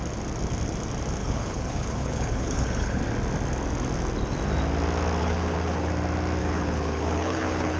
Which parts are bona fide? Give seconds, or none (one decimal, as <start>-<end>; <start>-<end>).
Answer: 0.0-1.2; 3.0-5.2; 5.9-6.4